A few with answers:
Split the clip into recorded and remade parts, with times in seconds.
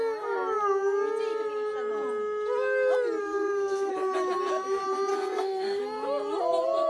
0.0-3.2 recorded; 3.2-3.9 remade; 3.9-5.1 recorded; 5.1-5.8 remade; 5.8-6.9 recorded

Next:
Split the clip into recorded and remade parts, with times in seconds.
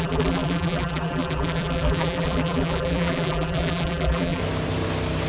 0.0-4.4 remade; 4.4-5.3 recorded